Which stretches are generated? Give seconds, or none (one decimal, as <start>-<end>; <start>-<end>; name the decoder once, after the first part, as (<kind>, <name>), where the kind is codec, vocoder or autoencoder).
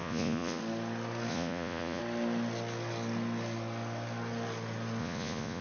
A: 0.0-0.6 (vocoder, Vocos); 1.3-2.0; 5.0-5.6